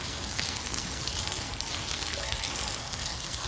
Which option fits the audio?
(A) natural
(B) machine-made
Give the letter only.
B